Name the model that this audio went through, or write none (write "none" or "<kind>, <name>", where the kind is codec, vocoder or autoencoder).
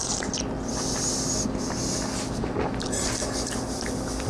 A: none